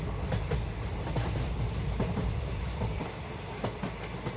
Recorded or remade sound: recorded